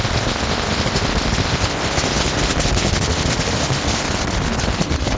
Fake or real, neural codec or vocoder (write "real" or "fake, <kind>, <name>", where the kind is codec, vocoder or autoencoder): real